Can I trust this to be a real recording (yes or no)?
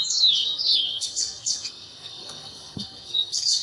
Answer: no